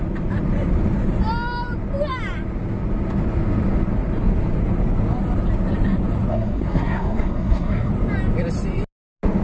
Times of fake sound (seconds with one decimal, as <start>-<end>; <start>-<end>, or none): 6.3-7.9